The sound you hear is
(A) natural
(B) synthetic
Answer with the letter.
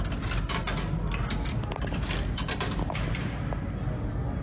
A